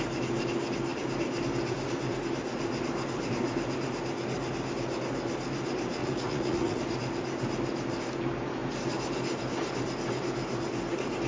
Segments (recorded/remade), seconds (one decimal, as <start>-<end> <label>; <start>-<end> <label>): 0.0-6.0 recorded; 6.0-6.8 remade; 6.8-11.3 recorded